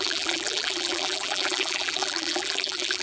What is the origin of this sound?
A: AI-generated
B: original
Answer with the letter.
A